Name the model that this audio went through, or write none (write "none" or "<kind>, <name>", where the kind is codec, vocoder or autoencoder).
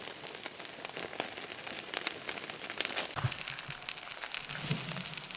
none